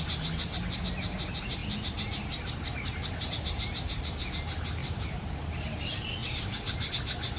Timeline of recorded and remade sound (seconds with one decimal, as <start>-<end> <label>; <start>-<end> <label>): 0.0-4.8 recorded; 4.8-5.8 remade; 5.8-6.2 recorded; 6.2-6.9 remade; 6.9-7.4 recorded